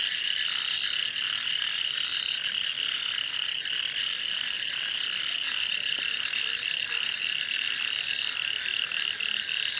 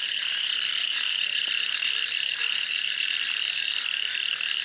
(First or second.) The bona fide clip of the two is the first